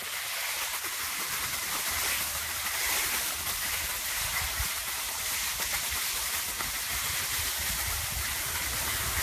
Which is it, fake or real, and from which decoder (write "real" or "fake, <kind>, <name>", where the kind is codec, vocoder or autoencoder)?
real